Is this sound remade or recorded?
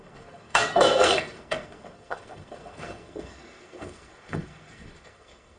remade